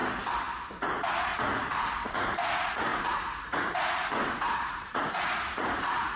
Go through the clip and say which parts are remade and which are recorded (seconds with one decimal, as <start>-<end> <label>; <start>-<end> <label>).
0.0-0.8 recorded; 0.8-6.2 remade